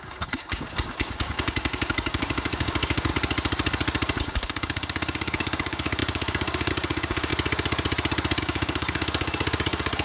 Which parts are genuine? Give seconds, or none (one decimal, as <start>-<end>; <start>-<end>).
3.1-4.2; 7.3-8.4

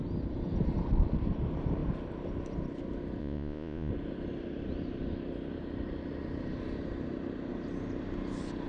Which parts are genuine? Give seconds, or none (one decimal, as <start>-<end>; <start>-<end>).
0.0-3.2; 3.9-8.7

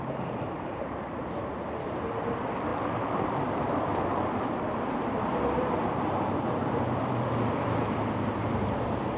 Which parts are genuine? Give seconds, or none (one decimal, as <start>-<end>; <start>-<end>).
none

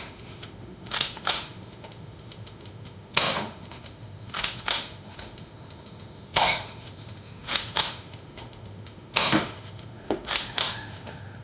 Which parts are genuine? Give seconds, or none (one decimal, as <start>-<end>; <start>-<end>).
none

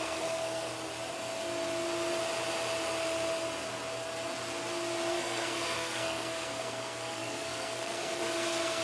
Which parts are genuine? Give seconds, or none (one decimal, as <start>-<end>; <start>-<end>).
0.7-5.1